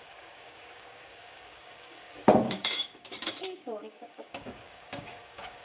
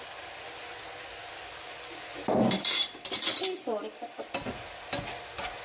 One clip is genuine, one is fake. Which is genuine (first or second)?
second